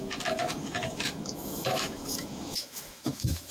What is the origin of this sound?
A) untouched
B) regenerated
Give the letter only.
B